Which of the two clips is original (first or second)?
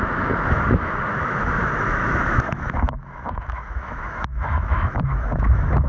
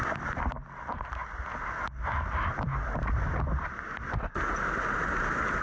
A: second